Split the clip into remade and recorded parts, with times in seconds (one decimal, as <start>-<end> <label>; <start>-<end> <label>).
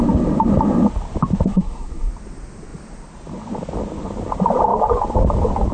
0.0-1.5 recorded; 1.5-2.1 remade; 2.1-5.7 recorded